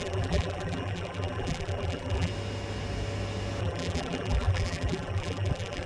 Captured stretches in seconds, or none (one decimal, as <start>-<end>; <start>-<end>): 2.3-3.6